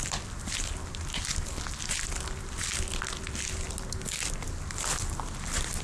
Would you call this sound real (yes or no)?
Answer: yes